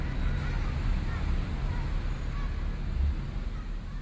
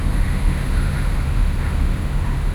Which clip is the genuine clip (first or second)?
first